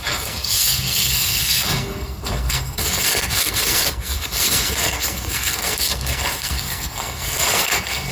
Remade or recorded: remade